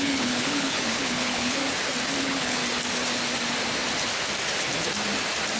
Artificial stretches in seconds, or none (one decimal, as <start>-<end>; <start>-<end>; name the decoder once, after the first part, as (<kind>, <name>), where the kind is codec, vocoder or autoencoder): 0.0-1.6 (codec, HILCodec); 2.2-2.6